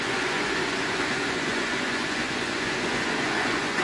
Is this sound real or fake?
fake